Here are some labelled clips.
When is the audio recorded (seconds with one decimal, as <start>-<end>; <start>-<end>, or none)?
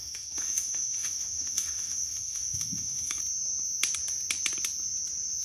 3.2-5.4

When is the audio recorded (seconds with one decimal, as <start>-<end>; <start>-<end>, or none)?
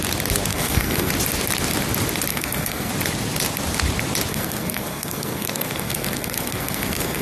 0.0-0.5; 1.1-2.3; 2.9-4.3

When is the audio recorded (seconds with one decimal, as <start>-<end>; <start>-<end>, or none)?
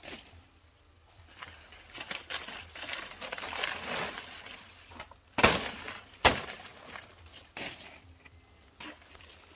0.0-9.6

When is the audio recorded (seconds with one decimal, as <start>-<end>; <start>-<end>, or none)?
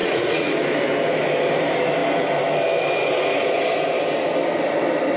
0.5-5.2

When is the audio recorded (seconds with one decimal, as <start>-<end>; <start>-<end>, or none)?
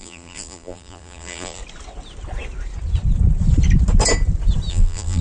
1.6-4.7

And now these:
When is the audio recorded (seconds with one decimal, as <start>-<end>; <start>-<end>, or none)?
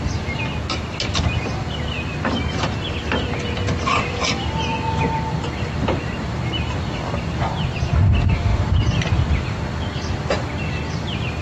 0.0-8.5; 9.0-11.4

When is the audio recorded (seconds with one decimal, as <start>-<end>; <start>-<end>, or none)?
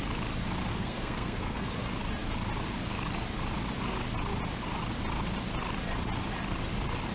0.0-0.7; 1.7-7.1